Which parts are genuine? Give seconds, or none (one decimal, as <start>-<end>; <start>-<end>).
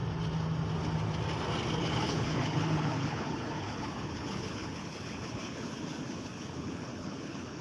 0.0-1.8